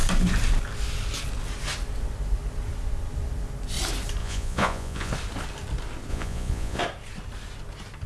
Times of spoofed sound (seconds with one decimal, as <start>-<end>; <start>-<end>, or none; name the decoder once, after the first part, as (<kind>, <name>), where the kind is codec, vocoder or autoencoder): 4.2-5.1 (vocoder, Vocos); 6.1-6.8